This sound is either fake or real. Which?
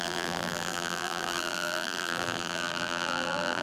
fake